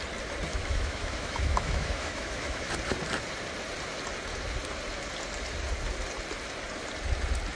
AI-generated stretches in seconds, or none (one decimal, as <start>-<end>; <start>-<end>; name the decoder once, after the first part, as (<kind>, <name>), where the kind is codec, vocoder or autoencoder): 0.5-2.7 (autoencoder, DAC-VAE)

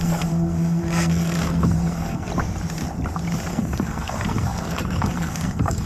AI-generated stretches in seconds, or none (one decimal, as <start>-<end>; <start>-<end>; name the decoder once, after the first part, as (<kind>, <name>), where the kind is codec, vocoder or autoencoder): 0.0-2.3 (codec, SNAC); 3.5-5.9

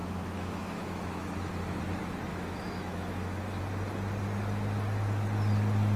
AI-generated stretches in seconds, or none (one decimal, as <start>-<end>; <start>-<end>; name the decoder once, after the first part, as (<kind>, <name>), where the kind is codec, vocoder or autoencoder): 0.0-1.5 (autoencoder, DAC-VAE); 2.3-3.6

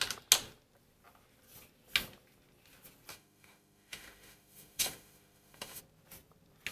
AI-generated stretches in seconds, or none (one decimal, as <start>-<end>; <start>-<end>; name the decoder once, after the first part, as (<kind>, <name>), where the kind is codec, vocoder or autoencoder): 3.1-5.8 (autoencoder, DAC-VAE)

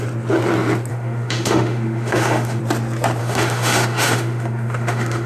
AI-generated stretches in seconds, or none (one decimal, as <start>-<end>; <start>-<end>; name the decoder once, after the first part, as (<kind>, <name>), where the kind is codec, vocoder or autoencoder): 0.9-2.6 (autoencoder, DAC-VAE); 3.2-5.3

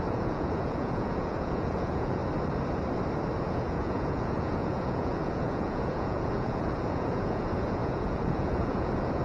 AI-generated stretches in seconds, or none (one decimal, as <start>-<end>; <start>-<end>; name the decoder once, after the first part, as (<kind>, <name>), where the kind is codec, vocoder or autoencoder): 0.0-2.2 (vocoder, Vocos); 3.4-9.2